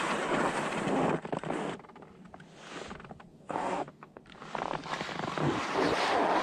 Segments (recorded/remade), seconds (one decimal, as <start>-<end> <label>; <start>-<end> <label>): 0.0-3.3 recorded; 3.3-4.2 remade; 4.2-6.4 recorded